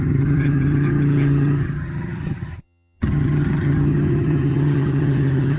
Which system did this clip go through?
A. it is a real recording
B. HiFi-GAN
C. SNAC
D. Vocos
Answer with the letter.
B